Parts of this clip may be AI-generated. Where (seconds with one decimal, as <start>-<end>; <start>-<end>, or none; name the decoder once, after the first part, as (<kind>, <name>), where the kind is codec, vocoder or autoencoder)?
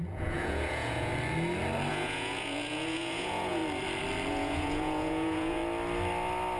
0.0-1.1 (vocoder, Vocos); 1.9-3.6; 4.3-5.6